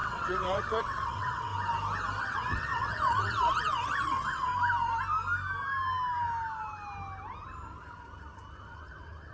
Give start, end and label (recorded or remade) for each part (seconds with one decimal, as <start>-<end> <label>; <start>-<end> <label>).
0.0-1.5 remade; 1.5-2.2 recorded; 2.2-4.5 remade; 4.5-8.6 recorded; 8.6-9.3 remade